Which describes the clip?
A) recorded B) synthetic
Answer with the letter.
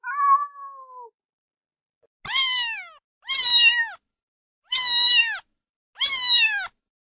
A